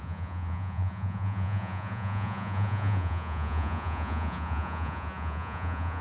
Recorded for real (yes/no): no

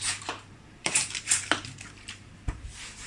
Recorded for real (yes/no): no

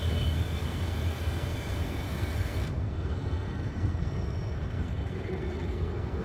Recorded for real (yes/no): no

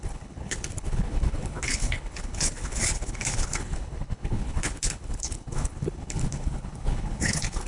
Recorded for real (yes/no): no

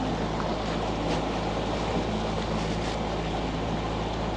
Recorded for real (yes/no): yes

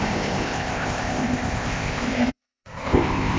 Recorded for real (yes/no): no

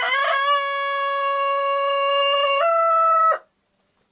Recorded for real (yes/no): yes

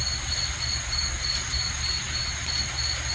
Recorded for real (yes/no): yes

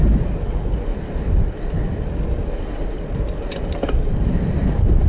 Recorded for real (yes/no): yes